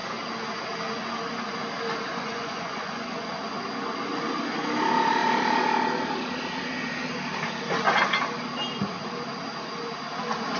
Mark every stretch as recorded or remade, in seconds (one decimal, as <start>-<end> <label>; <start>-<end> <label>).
0.0-2.1 recorded; 2.1-3.4 remade; 3.4-10.6 recorded